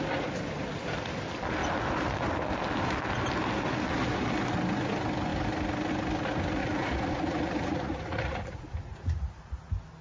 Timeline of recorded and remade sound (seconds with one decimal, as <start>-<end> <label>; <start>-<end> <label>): 0.0-6.6 recorded; 6.6-9.6 remade; 9.6-10.0 recorded